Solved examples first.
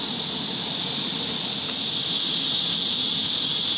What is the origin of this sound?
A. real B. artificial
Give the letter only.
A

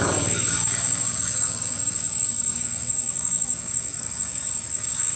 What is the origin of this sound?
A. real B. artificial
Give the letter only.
B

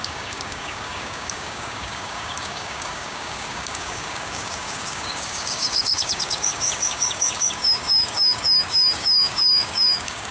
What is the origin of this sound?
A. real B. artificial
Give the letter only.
B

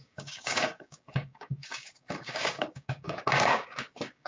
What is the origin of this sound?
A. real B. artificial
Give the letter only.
B